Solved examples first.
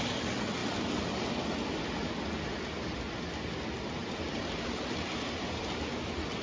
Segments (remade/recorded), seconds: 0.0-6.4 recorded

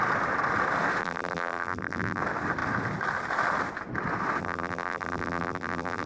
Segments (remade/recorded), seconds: 0.0-1.0 recorded; 1.0-2.2 remade; 2.2-4.4 recorded; 4.4-6.1 remade